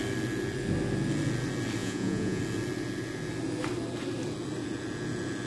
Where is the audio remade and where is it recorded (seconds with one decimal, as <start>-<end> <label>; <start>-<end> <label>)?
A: 0.0-1.8 recorded; 1.8-2.4 remade; 2.4-5.5 recorded